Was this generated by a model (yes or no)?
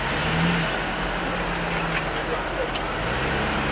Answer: no